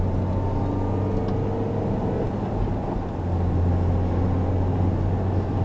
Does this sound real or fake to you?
real